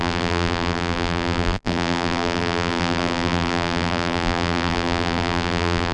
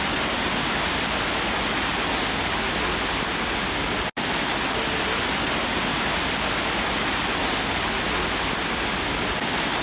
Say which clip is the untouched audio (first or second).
second